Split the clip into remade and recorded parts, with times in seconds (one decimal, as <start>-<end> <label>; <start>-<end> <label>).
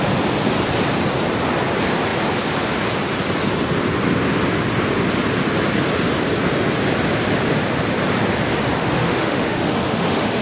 0.0-8.8 recorded; 8.8-10.4 remade